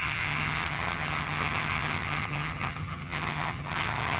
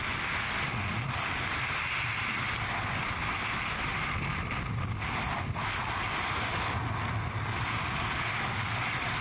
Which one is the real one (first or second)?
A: second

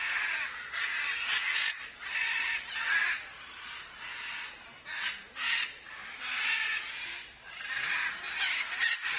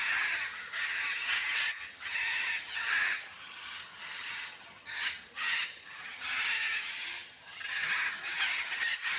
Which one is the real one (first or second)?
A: first